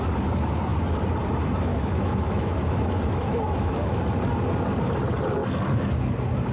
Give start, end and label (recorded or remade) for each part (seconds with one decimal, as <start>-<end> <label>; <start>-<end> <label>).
0.0-1.7 recorded; 1.7-4.0 remade; 4.0-6.5 recorded